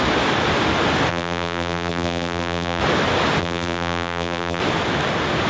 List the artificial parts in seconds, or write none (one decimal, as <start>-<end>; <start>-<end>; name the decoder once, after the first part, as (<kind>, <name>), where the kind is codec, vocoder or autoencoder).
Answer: 1.1-2.8 (vocoder, BigVGAN v2); 3.4-4.6